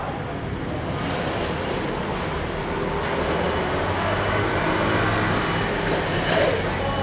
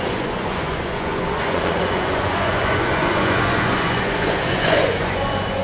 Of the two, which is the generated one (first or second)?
second